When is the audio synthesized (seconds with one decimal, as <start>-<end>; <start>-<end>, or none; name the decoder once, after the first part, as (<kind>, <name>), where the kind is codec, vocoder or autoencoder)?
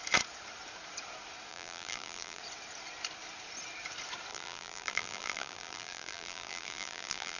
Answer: 1.5-2.4 (vocoder, BigVGAN v2); 4.3-7.4